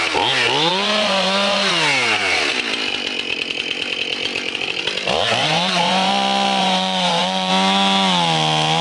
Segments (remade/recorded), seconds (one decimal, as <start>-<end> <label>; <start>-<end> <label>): 0.0-0.7 recorded; 0.7-1.7 remade; 1.7-5.4 recorded; 5.4-6.1 remade; 6.1-6.6 recorded; 6.6-7.5 remade; 7.5-8.8 recorded